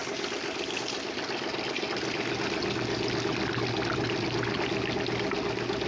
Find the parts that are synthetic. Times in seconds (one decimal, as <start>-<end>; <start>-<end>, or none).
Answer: none